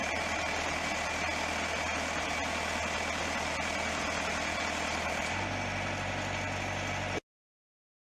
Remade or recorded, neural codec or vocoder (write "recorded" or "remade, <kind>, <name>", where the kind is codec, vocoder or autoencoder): recorded